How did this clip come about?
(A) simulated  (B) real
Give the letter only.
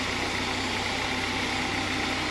B